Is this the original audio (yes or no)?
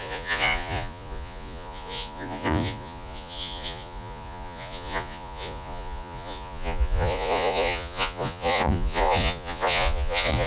no